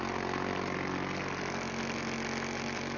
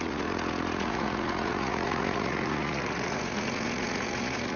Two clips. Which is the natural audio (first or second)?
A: first